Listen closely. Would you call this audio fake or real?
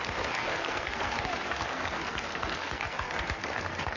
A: fake